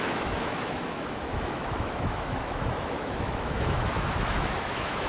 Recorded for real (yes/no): no